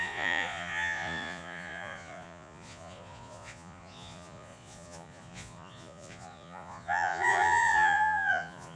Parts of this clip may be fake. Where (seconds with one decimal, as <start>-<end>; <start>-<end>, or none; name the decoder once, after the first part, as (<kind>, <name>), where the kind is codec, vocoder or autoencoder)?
0.0-8.8 (vocoder, Vocos)